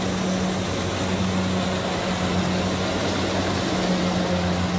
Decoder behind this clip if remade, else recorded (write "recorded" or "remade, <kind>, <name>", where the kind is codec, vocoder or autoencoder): recorded